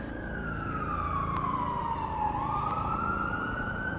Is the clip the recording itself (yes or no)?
no